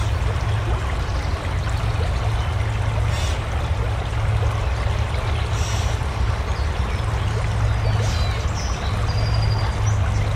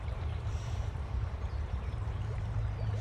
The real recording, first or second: first